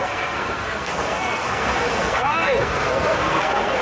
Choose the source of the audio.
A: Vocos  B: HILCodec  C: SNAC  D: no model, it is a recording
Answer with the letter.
C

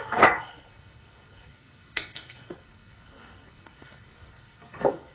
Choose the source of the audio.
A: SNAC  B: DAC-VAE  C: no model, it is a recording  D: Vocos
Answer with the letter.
A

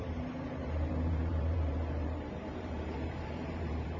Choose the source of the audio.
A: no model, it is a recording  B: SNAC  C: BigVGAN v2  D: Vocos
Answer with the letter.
C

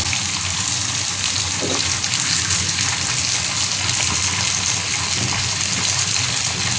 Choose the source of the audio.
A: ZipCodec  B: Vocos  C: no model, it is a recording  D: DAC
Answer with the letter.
C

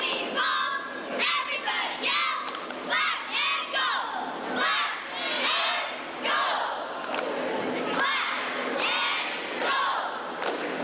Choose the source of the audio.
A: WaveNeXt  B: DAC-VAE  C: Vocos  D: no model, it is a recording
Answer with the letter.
D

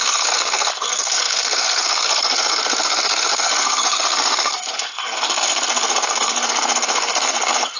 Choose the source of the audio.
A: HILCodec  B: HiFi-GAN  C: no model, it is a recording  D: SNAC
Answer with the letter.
D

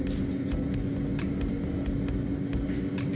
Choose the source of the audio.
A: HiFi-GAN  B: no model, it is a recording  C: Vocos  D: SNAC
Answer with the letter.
B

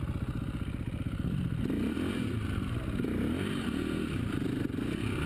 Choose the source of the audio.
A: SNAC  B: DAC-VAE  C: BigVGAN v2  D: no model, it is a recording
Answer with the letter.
D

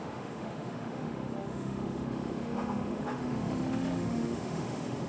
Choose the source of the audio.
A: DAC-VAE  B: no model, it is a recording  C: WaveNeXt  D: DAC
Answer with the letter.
A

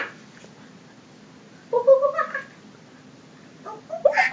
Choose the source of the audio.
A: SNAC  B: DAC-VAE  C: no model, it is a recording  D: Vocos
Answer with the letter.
C